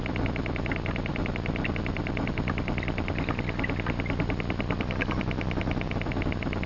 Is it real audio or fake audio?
real